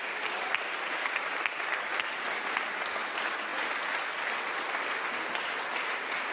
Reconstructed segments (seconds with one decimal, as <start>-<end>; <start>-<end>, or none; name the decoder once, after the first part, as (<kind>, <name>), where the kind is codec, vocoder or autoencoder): 0.0-3.5 (vocoder, BigVGAN v2); 5.1-6.3